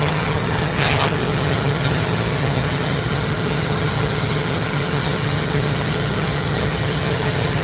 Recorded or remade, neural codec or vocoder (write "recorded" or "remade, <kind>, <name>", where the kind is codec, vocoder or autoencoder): remade, vocoder, HiFi-GAN